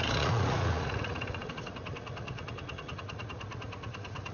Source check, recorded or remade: remade